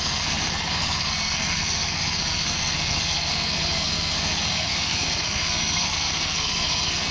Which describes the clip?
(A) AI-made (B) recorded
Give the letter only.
A